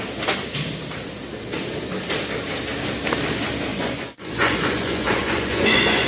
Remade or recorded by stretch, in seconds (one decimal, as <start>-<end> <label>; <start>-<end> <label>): 0.0-3.7 recorded; 3.7-6.1 remade